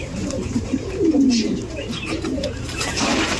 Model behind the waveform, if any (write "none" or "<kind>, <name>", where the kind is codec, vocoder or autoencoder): vocoder, BigVGAN v2